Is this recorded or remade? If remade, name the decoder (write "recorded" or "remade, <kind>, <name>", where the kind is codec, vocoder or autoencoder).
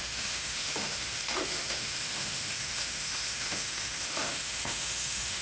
remade, autoencoder, DAC-VAE